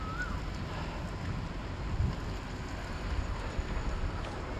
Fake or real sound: real